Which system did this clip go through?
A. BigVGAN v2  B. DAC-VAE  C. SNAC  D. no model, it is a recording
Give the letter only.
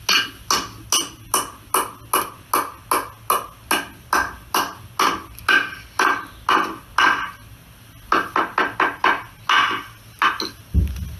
D